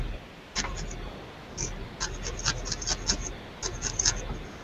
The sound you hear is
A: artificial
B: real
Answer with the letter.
B